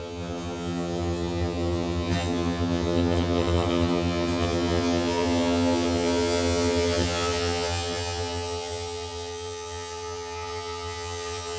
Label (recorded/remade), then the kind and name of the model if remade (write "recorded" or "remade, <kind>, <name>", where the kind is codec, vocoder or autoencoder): remade, vocoder, HiFi-GAN